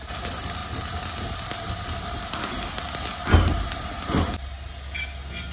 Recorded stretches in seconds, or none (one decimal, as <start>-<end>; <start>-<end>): 0.0-5.5